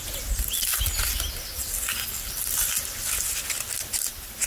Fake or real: real